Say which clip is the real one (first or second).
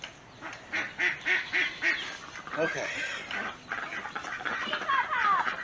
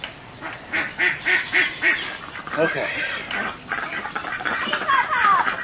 first